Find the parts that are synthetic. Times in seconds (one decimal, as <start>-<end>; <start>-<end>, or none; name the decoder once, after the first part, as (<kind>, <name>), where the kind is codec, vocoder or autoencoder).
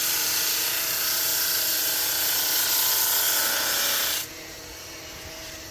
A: 0.0-1.3 (vocoder, BigVGAN v2); 4.3-5.7